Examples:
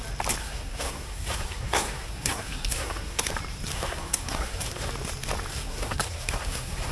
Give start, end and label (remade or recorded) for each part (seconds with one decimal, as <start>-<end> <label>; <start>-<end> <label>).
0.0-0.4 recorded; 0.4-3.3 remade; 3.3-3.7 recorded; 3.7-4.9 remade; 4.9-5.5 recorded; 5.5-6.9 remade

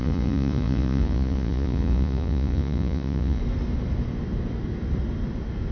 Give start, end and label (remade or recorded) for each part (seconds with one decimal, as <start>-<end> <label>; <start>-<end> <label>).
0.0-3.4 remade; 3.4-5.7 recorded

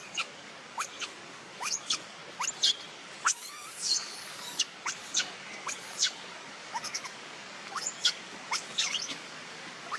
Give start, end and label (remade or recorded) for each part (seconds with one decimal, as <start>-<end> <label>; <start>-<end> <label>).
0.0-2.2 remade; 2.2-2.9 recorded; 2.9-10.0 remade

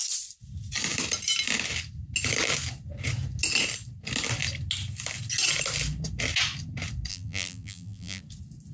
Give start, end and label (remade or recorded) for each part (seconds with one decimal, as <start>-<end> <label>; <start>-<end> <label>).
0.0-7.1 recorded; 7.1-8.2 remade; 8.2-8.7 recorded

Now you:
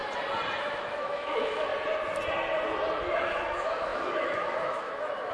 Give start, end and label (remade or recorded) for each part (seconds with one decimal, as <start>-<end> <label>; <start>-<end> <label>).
0.0-0.6 recorded; 0.6-1.7 remade; 1.7-3.1 recorded; 3.1-5.3 remade

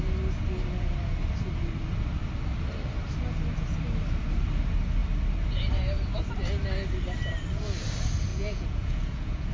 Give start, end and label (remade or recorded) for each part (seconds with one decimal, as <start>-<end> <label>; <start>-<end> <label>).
0.0-8.3 recorded; 8.3-9.5 remade

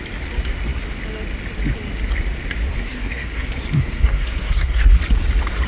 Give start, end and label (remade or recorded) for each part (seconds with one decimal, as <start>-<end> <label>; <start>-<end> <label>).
0.0-2.7 recorded; 2.7-5.0 remade; 5.0-5.7 recorded